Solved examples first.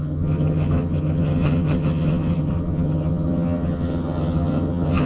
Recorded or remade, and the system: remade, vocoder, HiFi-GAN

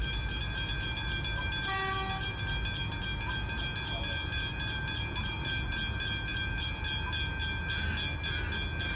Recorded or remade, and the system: recorded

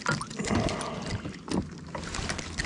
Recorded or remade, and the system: recorded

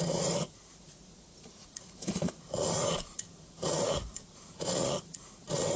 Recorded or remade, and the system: remade, vocoder, Vocos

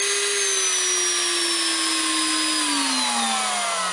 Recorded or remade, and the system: recorded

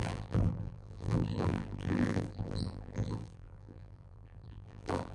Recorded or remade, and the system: remade, vocoder, BigVGAN v2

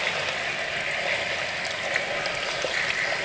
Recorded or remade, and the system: recorded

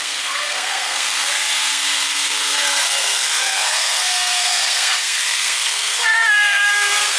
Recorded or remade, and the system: remade, codec, SNAC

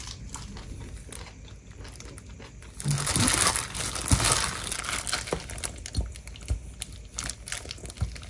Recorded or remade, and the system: recorded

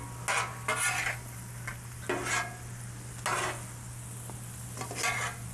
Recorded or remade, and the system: recorded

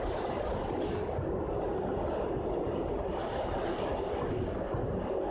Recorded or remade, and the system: recorded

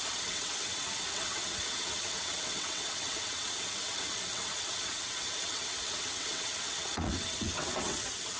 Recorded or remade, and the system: remade, vocoder, WaveNeXt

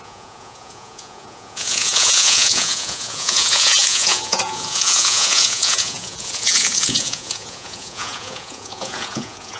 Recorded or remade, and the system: remade, vocoder, Vocos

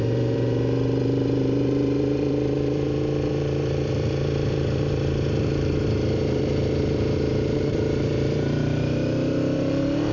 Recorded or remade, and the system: remade, vocoder, BigVGAN v2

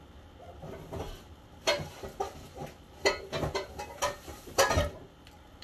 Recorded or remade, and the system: recorded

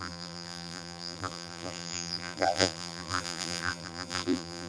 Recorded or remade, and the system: remade, vocoder, BigVGAN v2